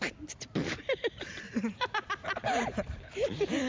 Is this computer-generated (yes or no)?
yes